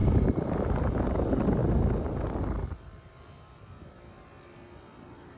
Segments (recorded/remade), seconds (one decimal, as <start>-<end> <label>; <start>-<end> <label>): 0.0-1.1 remade; 1.1-5.4 recorded